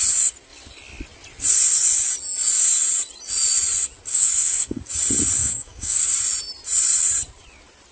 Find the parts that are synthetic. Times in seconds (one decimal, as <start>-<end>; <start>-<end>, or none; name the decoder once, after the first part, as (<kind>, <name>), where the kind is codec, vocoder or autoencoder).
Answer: 4.1-4.8 (autoencoder, DAC-VAE); 5.4-6.0